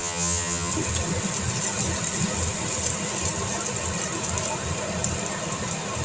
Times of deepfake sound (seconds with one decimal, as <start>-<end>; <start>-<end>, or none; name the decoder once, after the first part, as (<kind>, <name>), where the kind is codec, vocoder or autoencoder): 0.0-0.7 (vocoder, HiFi-GAN)

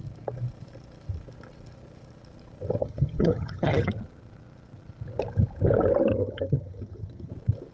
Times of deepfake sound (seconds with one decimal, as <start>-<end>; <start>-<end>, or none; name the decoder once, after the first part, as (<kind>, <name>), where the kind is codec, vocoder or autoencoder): 2.8-3.9 (vocoder, HiFi-GAN); 6.1-7.3

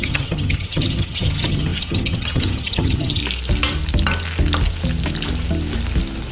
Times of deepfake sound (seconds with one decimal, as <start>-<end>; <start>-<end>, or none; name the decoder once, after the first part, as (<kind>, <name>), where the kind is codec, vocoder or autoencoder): 0.0-3.2 (vocoder, HiFi-GAN)

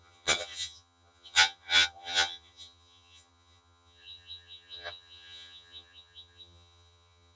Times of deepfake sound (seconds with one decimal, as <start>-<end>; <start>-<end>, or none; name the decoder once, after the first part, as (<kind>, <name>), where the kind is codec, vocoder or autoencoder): 0.0-7.4 (vocoder, HiFi-GAN)

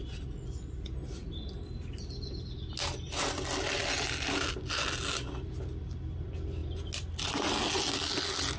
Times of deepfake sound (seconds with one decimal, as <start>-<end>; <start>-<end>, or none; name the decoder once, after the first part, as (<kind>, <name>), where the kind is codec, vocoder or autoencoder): none

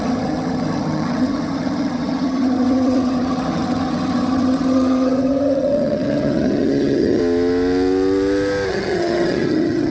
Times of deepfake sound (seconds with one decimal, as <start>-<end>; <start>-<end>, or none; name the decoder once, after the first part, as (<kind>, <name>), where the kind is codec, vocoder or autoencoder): 0.0-7.2 (vocoder, HiFi-GAN); 8.7-9.9